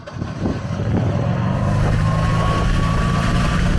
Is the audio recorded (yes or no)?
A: yes